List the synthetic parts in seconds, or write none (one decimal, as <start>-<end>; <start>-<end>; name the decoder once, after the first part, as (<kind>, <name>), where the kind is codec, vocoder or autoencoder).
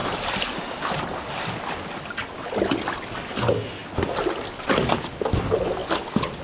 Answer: none